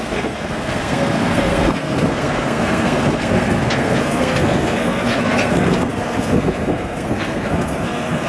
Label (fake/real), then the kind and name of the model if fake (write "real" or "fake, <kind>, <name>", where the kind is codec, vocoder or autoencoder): fake, codec, SNAC